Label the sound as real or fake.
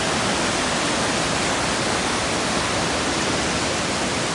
real